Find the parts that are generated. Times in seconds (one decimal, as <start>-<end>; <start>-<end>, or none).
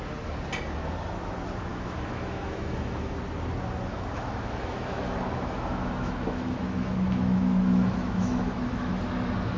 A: 1.7-3.2; 3.9-8.9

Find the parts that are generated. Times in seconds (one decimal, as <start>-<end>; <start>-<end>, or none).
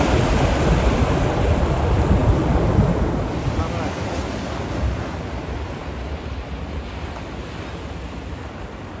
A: none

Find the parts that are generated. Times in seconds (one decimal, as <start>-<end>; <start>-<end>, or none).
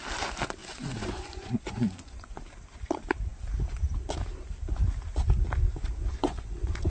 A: 0.6-2.4; 6.1-6.9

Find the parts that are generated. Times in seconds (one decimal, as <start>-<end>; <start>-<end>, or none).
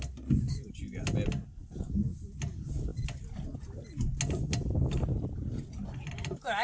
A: none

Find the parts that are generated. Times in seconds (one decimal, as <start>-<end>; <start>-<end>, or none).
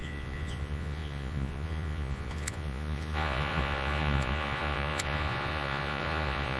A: 0.0-6.6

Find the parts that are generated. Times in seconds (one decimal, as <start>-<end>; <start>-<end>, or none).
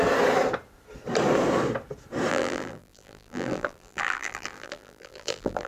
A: 2.3-5.7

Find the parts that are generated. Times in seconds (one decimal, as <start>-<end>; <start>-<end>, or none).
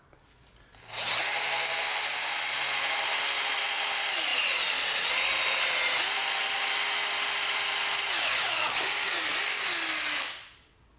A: none